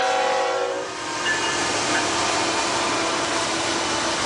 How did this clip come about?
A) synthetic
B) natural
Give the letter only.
A